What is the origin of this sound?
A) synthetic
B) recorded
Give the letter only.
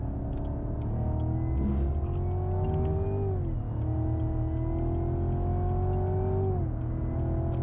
B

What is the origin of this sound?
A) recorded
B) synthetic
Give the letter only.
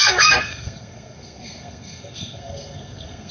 B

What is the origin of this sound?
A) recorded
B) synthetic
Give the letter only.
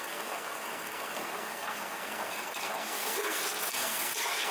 B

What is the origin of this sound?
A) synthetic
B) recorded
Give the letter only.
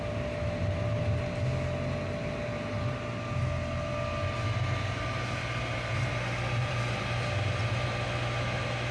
B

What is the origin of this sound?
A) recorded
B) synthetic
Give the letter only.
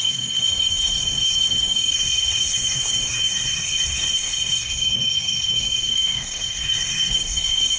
B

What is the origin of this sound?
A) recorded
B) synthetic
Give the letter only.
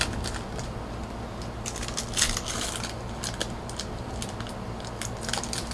A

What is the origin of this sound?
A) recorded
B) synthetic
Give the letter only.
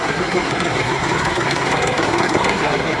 B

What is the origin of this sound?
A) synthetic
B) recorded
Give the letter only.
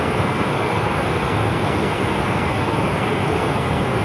A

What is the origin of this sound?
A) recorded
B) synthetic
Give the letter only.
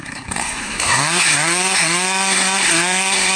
B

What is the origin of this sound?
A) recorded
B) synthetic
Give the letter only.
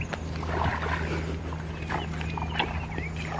A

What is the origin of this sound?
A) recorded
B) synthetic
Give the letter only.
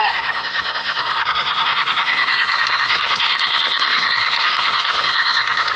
B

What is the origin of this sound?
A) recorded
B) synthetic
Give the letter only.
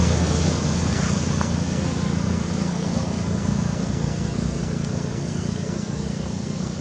B